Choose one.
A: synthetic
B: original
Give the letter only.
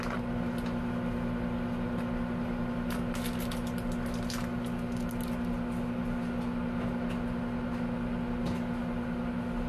B